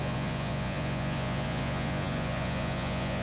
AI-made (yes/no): yes